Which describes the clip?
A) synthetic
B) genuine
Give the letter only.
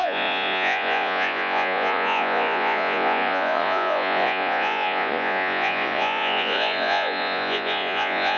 A